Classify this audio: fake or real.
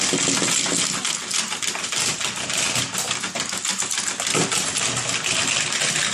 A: real